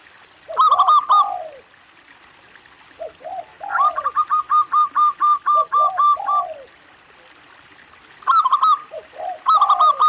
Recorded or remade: recorded